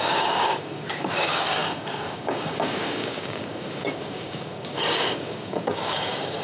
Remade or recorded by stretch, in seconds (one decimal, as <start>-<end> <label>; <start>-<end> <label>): 0.0-6.4 remade